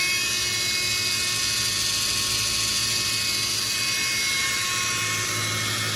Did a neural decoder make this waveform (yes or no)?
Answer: no